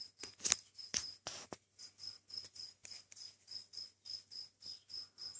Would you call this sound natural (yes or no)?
yes